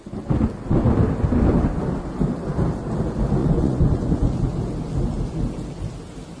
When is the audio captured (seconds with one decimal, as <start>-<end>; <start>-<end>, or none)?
0.0-3.4; 4.3-6.4